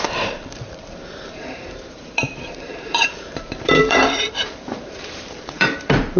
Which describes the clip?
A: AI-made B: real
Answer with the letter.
A